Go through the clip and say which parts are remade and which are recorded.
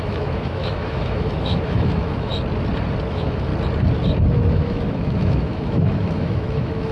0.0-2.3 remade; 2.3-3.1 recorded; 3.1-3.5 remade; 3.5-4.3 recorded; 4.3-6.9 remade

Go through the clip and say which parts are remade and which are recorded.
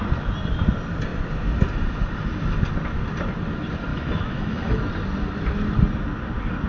0.0-3.9 recorded; 3.9-4.9 remade; 4.9-6.7 recorded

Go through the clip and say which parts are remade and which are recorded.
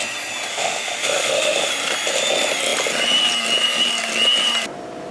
0.0-0.5 recorded; 0.5-1.7 remade; 1.7-5.1 recorded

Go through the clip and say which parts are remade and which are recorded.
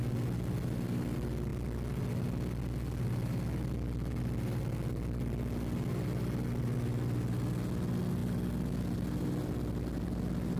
0.0-10.6 recorded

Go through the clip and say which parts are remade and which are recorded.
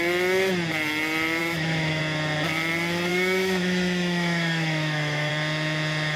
0.0-1.4 recorded; 1.4-2.0 remade; 2.0-3.1 recorded; 3.1-5.3 remade; 5.3-6.2 recorded